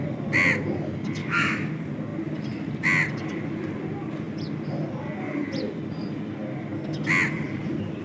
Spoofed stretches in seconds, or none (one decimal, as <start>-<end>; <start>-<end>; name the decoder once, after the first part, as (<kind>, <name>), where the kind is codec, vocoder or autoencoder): 1.2-1.7 (autoencoder, DAC-VAE)